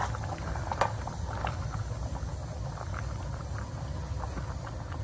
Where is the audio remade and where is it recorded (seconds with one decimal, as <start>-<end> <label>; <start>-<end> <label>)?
0.0-5.0 recorded